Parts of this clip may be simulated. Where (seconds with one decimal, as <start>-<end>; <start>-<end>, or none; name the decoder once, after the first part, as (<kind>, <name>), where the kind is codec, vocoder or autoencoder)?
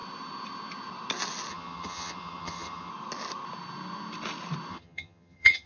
1.5-2.9 (vocoder, HiFi-GAN); 4.7-5.7